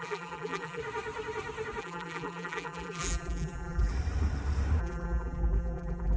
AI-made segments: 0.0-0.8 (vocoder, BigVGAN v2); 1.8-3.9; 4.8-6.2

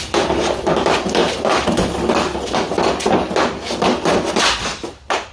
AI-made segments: none

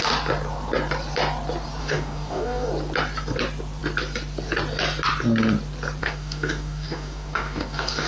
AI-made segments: 1.8-2.7 (codec, DAC); 6.0-8.1

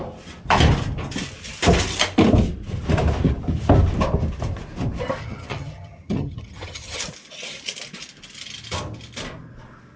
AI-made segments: 5.2-7.0 (vocoder, HiFi-GAN)

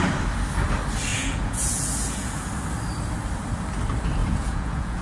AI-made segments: 1.1-2.5 (vocoder, Vocos); 4.2-5.0

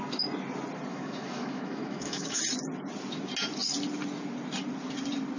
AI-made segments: 0.9-2.4 (autoencoder, DAC-VAE)